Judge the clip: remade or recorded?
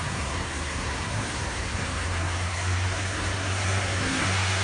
remade